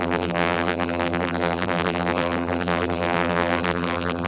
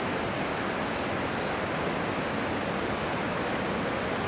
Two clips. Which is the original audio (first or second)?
second